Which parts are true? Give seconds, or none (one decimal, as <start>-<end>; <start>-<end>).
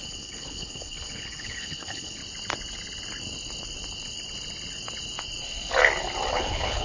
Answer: 2.2-6.3